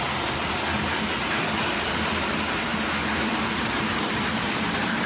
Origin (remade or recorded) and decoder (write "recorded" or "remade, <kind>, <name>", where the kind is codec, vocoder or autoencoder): recorded